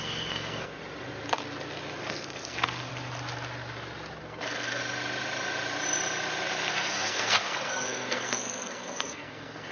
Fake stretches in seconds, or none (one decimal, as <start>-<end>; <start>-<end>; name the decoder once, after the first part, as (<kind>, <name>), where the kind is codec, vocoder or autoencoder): 0.0-0.8 (codec, SNAC); 2.0-2.9; 4.2-4.8; 6.7-9.7